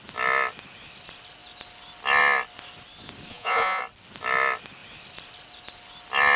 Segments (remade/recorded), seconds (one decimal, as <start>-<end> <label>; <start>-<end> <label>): 0.0-3.3 recorded; 3.3-3.8 remade; 3.8-6.4 recorded